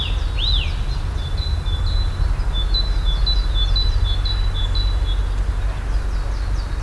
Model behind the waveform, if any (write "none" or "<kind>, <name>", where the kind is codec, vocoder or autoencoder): none